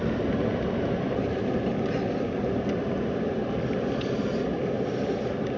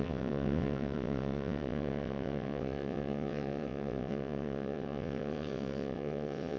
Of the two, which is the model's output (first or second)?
second